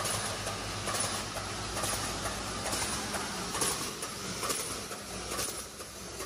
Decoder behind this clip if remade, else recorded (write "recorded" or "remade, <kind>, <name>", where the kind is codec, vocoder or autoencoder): recorded